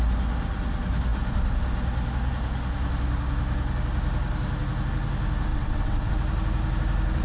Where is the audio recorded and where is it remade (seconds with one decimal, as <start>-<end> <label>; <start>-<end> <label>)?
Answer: 0.0-5.5 recorded; 5.5-6.1 remade; 6.1-7.2 recorded